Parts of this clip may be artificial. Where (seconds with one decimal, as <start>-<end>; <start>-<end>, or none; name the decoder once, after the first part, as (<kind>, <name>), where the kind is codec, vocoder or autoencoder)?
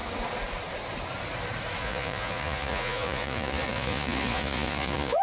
1.8-5.2 (vocoder, Vocos)